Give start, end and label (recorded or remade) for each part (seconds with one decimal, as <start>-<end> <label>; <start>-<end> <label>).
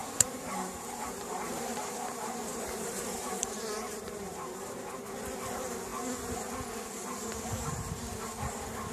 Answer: 0.0-5.0 remade; 5.0-8.9 recorded